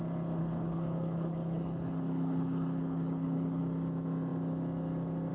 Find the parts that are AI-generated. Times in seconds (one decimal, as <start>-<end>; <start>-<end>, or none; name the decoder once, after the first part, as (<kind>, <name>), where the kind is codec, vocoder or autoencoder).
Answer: 0.4-3.6 (codec, HILCodec)